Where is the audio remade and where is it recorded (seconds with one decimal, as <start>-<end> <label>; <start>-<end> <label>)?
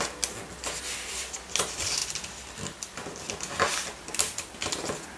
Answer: 0.0-5.2 recorded